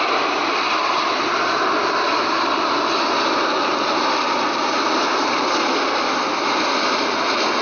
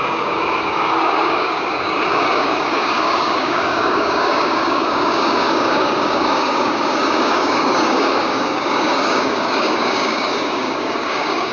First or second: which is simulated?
second